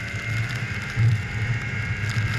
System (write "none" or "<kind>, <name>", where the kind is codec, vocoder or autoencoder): none